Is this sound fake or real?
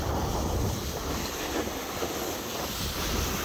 real